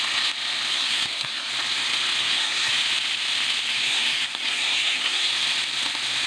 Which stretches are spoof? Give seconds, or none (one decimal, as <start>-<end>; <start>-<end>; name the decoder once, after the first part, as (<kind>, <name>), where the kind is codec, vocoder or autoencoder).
0.7-1.5 (codec, SNAC); 2.2-2.7; 3.7-5.3